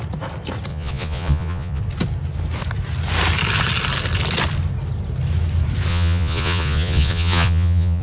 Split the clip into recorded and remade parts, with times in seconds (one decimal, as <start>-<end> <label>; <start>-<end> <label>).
0.0-0.7 recorded; 0.7-1.8 remade; 1.8-5.9 recorded; 5.9-8.0 remade